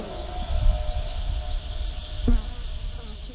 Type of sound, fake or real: real